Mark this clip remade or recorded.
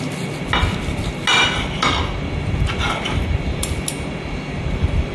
recorded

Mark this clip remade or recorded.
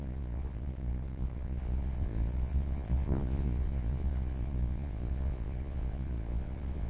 remade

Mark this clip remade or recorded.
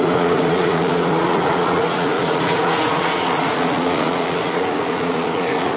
remade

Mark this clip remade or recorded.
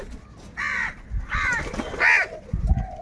recorded